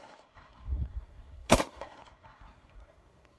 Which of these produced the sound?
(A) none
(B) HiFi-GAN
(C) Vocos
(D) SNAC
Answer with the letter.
D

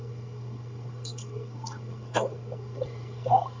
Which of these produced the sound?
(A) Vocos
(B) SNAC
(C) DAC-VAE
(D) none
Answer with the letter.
B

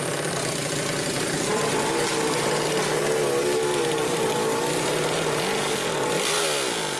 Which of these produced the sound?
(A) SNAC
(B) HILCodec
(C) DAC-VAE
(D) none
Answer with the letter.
D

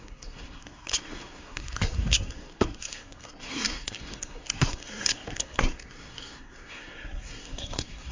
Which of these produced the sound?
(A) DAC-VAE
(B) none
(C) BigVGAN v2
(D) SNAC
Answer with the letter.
D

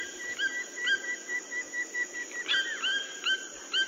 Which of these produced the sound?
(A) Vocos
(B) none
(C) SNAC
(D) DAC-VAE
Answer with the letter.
B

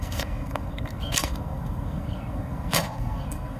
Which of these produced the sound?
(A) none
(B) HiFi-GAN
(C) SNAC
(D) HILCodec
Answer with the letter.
C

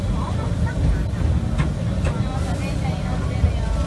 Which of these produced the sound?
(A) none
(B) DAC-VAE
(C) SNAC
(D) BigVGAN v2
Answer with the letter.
A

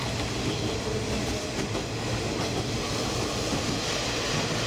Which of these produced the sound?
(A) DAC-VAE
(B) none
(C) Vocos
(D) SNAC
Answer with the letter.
B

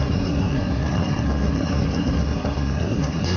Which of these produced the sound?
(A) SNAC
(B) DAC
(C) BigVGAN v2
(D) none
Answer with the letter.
A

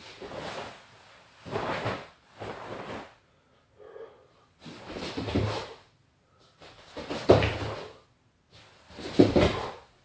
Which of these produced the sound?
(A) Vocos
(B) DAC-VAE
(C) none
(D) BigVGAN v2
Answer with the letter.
C